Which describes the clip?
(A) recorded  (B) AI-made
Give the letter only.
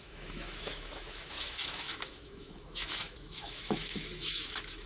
B